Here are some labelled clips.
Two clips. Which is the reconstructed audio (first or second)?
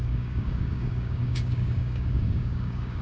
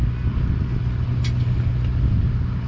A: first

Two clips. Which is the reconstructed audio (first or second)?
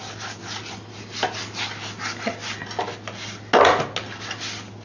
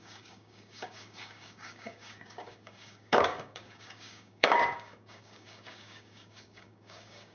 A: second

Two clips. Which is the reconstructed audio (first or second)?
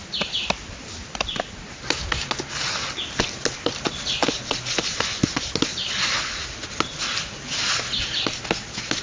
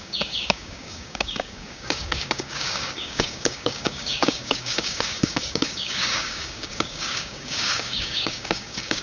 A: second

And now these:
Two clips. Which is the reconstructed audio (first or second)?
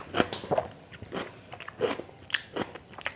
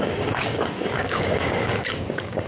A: second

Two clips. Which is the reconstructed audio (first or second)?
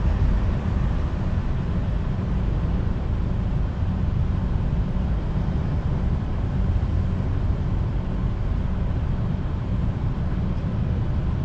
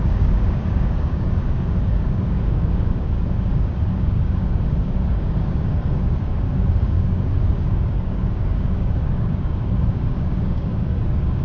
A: second